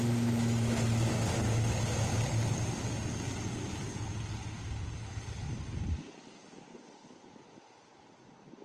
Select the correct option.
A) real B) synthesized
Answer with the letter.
A